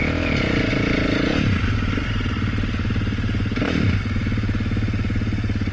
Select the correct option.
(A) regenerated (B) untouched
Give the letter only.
B